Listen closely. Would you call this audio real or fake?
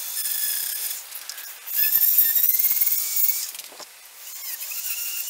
real